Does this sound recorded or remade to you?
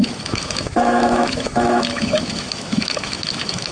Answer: remade